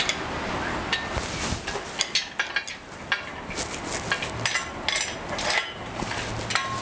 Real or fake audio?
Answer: real